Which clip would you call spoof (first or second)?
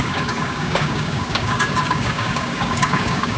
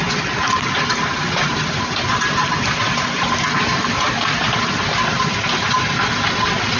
first